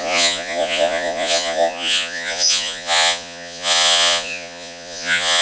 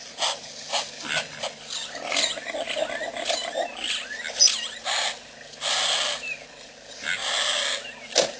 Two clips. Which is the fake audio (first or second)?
first